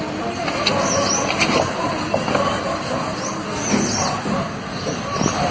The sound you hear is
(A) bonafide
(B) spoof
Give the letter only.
A